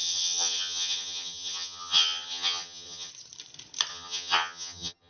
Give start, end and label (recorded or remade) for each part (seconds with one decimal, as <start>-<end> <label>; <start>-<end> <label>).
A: 0.0-3.1 remade; 3.1-3.9 recorded; 3.9-5.1 remade